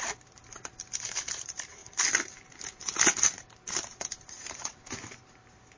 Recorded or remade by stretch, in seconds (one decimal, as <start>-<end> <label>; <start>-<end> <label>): 0.0-5.8 remade